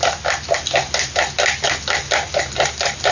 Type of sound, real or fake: real